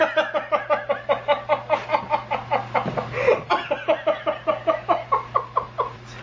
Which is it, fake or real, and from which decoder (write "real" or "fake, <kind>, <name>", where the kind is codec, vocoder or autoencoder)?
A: real